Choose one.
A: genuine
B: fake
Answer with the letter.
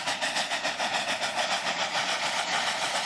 B